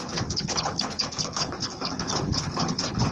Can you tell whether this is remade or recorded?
remade